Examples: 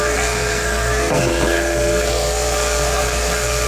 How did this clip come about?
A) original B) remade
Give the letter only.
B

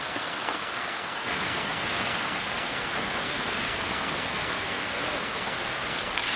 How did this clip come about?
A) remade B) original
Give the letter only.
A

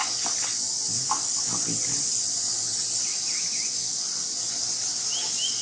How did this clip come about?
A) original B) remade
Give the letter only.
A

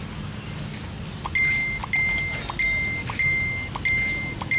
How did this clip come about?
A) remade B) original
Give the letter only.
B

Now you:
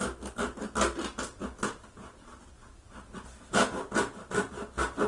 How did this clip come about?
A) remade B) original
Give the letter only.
B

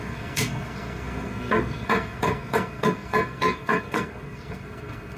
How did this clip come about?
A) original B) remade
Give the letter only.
B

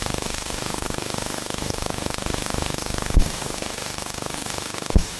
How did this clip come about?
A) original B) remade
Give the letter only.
B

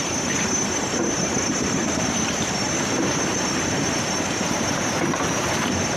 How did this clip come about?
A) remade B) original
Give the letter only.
A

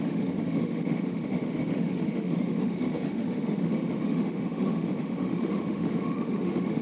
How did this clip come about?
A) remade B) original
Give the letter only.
A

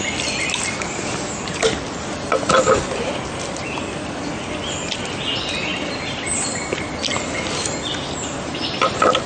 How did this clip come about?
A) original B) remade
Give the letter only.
A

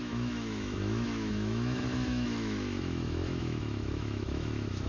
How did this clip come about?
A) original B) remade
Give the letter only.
B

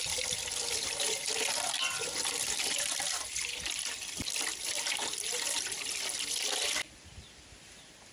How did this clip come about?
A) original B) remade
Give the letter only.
B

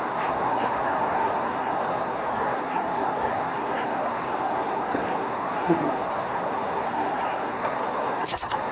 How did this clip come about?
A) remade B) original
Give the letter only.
A